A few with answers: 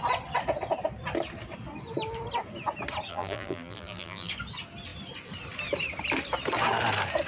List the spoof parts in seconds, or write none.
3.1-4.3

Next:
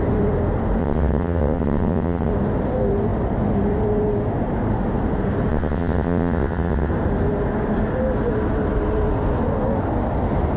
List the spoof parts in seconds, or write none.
0.8-2.3; 5.5-6.9

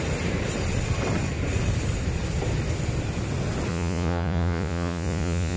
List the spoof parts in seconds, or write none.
3.7-5.6

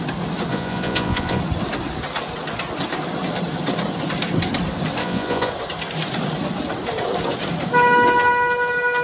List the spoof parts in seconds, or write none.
0.5-1.4; 5.0-5.5